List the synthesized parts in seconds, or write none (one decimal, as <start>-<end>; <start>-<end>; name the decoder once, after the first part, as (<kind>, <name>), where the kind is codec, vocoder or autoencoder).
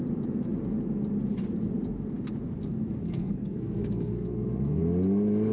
3.0-4.8 (codec, SNAC)